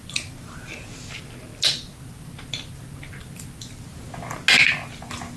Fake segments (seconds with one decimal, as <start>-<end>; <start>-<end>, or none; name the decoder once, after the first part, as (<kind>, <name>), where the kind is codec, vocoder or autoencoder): none